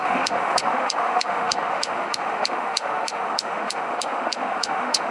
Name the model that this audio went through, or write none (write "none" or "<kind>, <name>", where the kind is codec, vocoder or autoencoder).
autoencoder, DAC-VAE